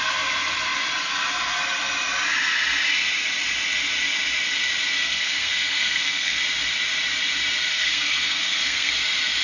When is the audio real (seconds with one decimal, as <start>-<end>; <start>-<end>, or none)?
0.0-5.0; 6.4-7.7; 8.9-9.4